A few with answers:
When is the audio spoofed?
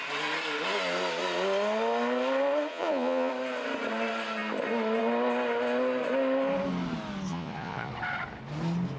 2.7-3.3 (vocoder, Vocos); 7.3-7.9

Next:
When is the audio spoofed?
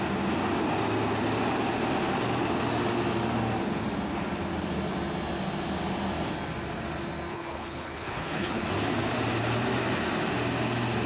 7.3-8.6 (codec, HILCodec)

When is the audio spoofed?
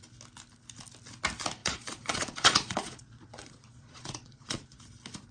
1.6-4.8 (vocoder, Vocos)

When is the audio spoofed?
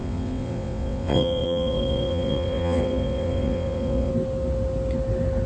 0.0-4.1 (vocoder, WaveNeXt)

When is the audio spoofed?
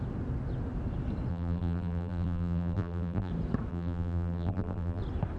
1.3-3.3 (vocoder, BigVGAN v2); 3.7-5.0